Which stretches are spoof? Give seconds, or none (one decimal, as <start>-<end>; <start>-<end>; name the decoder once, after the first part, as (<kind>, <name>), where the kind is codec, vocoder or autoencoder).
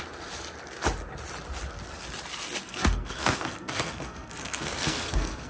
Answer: 2.6-5.5 (codec, SNAC)